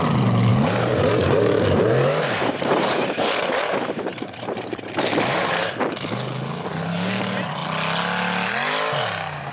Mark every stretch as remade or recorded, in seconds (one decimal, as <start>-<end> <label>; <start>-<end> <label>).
0.0-0.5 recorded; 0.5-5.7 remade; 5.7-9.5 recorded